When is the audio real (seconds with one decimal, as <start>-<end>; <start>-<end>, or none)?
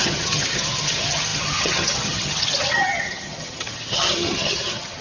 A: none